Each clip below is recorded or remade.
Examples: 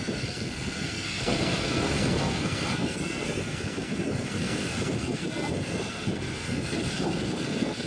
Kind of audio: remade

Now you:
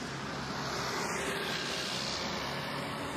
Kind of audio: recorded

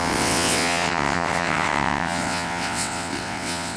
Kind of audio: remade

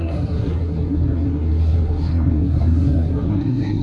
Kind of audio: remade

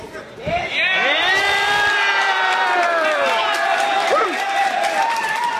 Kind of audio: remade